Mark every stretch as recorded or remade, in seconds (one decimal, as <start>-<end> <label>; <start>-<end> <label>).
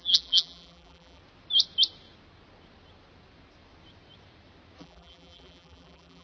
0.0-1.2 remade; 1.2-4.8 recorded; 4.8-6.2 remade